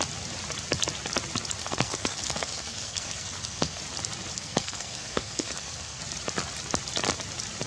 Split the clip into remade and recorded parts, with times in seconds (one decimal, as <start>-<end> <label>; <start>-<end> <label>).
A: 0.0-1.6 recorded; 1.6-3.8 remade; 3.8-4.3 recorded; 4.3-6.0 remade; 6.0-7.7 recorded